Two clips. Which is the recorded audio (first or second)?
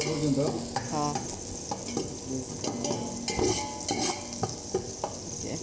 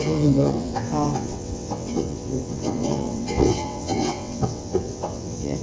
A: first